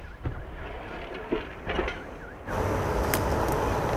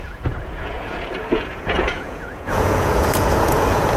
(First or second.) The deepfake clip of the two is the second